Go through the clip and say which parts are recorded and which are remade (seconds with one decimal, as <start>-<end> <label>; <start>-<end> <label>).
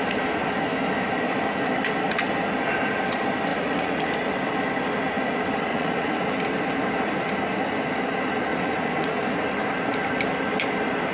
0.0-3.5 recorded; 3.5-4.1 remade; 4.1-5.7 recorded; 5.7-6.3 remade; 6.3-8.5 recorded; 8.5-9.1 remade; 9.1-11.1 recorded